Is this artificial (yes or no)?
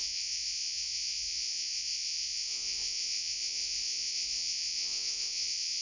yes